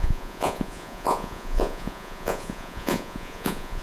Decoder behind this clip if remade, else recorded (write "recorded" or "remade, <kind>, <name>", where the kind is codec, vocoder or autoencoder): remade, vocoder, Vocos